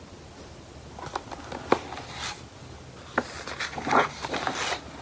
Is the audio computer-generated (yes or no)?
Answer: no